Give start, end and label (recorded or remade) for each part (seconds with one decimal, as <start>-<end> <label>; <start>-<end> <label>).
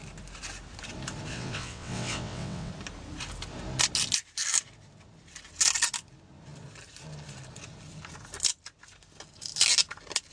0.0-1.3 recorded; 1.3-2.7 remade; 2.7-10.3 recorded